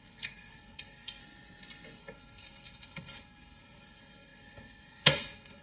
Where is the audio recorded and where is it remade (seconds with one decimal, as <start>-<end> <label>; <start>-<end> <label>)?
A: 0.0-1.2 remade; 1.2-2.0 recorded; 2.0-5.6 remade